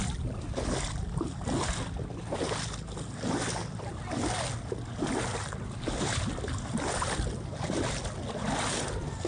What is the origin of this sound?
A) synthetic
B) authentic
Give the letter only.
B